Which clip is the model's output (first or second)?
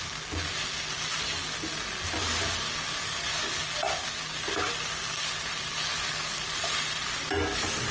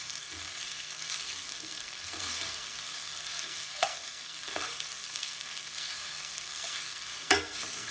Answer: second